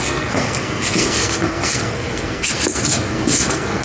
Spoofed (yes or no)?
yes